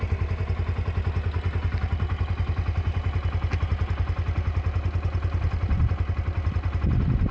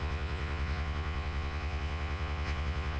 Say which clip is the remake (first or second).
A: second